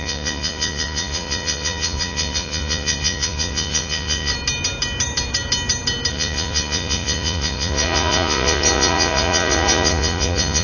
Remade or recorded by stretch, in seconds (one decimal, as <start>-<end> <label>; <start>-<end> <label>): 0.0-4.3 remade; 4.3-6.1 recorded; 6.1-10.6 remade